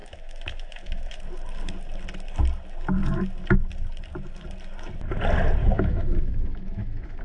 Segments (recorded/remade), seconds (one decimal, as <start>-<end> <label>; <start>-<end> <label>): 0.0-1.1 remade; 1.1-5.6 recorded; 5.6-7.2 remade